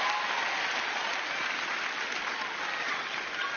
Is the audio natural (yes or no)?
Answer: yes